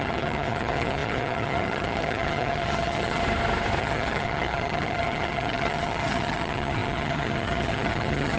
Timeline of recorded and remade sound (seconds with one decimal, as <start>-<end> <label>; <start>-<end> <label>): 0.0-3.2 remade; 3.2-3.8 recorded; 3.8-8.4 remade